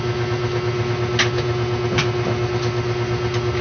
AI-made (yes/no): no